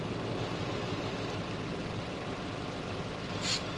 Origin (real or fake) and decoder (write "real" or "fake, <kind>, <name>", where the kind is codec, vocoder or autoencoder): real